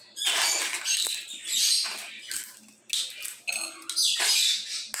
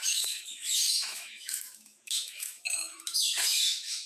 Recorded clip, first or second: first